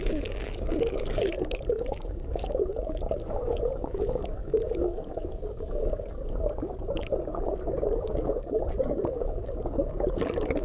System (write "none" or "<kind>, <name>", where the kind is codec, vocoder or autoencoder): codec, DAC